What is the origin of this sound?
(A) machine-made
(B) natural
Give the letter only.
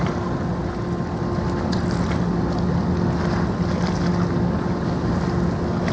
B